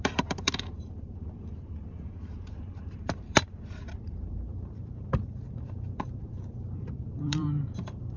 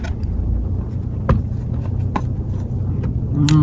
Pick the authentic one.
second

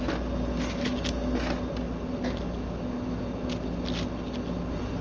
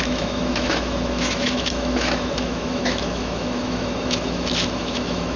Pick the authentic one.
first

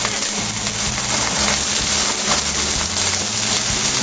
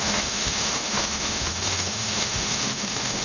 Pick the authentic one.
first